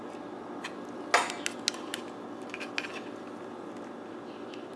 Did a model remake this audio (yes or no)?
no